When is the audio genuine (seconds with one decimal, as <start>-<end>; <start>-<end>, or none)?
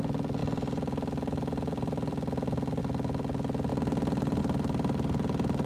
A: 0.0-5.7